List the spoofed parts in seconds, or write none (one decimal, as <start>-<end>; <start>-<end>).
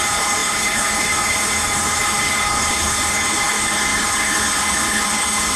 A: 0.0-5.6